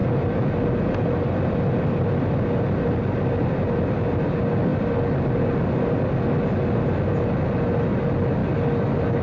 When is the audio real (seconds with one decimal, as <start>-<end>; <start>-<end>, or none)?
0.5-9.2